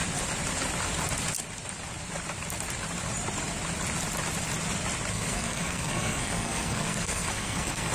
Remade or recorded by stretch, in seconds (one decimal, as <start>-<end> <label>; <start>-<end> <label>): 0.0-5.1 recorded; 5.1-7.9 remade